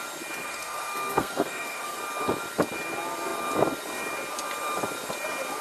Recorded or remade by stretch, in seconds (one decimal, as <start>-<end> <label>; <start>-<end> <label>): 0.0-0.4 recorded; 0.4-2.0 remade; 2.0-5.6 recorded